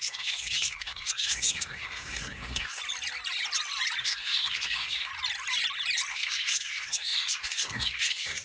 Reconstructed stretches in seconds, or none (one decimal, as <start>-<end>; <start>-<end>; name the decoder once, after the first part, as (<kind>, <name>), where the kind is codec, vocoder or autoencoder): 0.0-2.8 (codec, SNAC); 4.0-5.1; 6.1-8.4

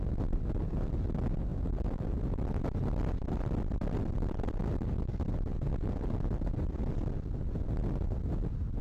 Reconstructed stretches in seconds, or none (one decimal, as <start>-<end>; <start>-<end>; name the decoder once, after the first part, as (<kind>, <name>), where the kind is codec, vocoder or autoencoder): none

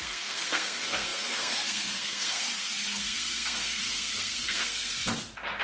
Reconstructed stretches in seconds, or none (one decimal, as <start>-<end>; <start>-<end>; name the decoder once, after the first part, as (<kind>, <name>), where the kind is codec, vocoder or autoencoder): 0.0-5.0 (codec, SNAC)

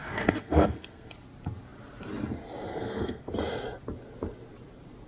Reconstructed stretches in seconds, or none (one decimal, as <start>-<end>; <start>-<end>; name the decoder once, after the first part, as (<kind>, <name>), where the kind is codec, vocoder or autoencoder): 0.0-1.1 (codec, SNAC); 2.7-3.3

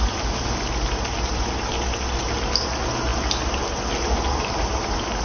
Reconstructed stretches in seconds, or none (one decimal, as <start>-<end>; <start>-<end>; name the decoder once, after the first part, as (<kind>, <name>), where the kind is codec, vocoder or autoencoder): none

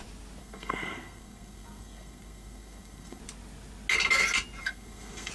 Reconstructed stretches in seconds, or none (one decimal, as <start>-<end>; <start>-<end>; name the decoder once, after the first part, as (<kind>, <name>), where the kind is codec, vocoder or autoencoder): 0.4-3.2 (codec, SNAC); 4.6-5.3

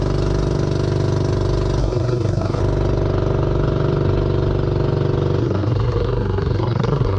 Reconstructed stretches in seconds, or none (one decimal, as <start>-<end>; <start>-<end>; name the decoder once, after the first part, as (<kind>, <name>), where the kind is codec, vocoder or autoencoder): 1.8-2.6 (codec, SNAC); 5.4-7.2

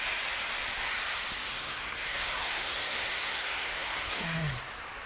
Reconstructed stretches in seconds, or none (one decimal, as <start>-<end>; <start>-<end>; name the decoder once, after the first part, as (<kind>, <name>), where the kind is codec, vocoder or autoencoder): 1.5-4.6 (codec, SNAC)